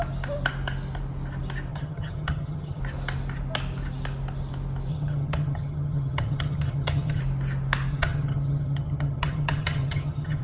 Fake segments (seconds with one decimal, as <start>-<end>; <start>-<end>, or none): 1.7-2.8; 4.9-7.2; 7.9-10.4